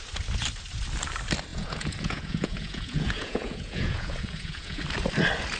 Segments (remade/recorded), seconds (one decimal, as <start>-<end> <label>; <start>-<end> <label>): 0.0-1.5 recorded; 1.5-4.8 remade; 4.8-5.6 recorded